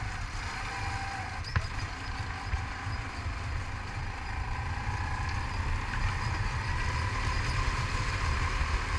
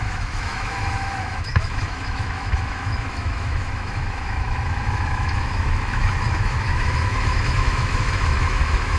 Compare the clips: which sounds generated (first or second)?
second